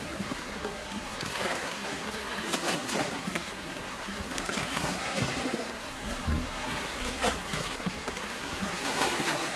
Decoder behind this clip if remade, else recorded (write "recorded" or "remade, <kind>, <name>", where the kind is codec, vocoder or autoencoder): remade, codec, SNAC